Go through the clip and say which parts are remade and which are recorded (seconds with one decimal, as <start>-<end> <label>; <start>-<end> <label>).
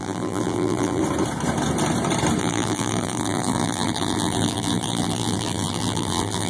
0.0-1.0 remade; 1.0-2.4 recorded; 2.4-6.5 remade